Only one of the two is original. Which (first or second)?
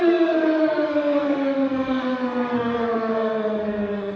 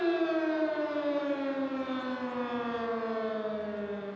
second